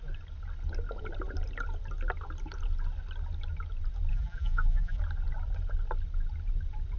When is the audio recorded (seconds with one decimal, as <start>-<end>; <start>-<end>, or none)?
0.0-4.1; 5.0-7.0